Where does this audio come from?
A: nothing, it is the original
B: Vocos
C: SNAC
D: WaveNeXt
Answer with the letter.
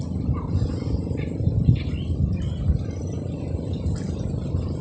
A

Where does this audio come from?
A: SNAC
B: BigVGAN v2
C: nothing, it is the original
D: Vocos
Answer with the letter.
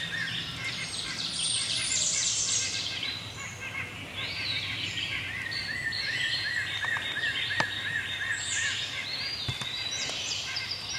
B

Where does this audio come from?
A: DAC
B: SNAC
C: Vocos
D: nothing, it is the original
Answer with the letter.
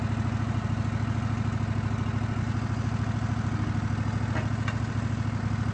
D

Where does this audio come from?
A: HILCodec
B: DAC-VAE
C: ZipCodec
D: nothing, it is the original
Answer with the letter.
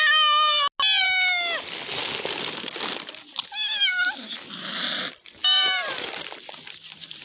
D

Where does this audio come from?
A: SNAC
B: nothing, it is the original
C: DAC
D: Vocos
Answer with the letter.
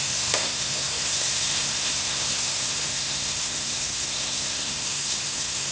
A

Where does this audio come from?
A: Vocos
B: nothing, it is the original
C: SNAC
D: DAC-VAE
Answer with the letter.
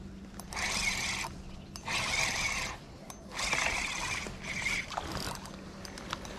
B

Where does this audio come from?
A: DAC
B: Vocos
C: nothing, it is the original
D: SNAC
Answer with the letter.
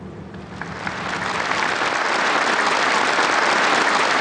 C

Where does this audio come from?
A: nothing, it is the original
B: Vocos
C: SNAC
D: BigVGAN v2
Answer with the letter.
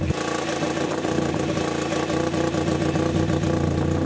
A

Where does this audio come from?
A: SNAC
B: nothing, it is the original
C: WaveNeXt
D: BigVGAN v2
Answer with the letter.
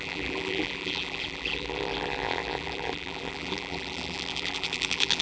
D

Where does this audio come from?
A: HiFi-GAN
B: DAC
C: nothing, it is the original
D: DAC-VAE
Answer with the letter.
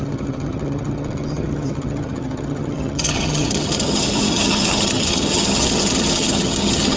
A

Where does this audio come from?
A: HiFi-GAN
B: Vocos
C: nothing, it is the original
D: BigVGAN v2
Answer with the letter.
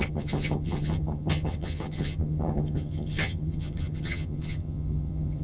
A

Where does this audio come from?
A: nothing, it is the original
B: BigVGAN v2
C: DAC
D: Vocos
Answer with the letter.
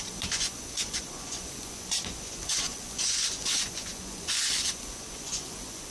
D